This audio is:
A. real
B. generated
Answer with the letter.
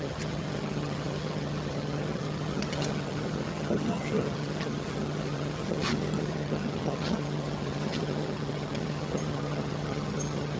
B